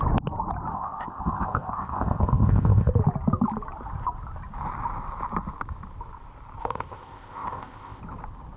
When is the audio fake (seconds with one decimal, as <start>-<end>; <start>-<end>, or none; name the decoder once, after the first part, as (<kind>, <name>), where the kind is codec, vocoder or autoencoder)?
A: 0.7-2.9 (codec, ZipCodec); 6.6-8.0